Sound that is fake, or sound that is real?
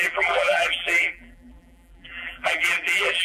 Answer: fake